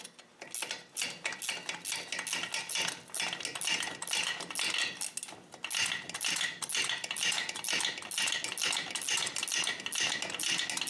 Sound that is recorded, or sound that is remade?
recorded